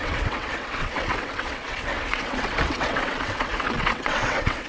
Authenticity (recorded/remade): remade